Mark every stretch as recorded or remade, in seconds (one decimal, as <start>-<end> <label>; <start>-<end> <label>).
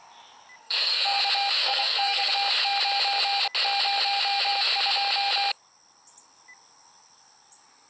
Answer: 0.0-0.6 recorded; 0.6-1.2 remade; 1.2-1.6 recorded; 1.6-2.3 remade; 2.3-7.9 recorded